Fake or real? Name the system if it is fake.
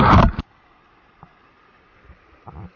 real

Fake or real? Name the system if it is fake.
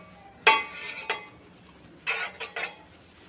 real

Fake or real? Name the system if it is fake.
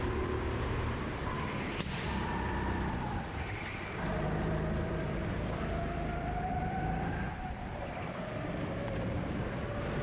fake, vocoder, BigVGAN v2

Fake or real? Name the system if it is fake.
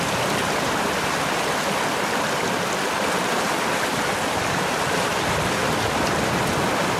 real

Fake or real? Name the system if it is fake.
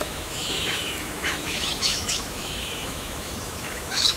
fake, autoencoder, DAC-VAE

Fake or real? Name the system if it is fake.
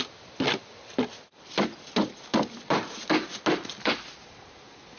real